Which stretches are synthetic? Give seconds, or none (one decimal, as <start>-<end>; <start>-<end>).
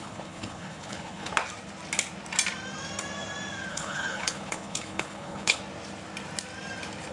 0.0-1.3; 3.7-5.6